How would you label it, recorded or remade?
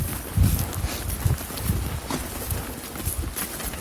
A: recorded